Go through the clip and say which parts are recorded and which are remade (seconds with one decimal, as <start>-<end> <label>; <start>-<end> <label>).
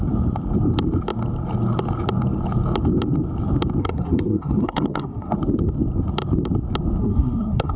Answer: 0.0-3.8 recorded; 3.8-5.3 remade; 5.3-7.0 recorded; 7.0-7.8 remade